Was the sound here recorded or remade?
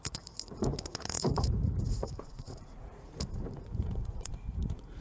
remade